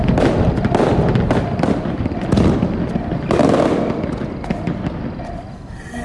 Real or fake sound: real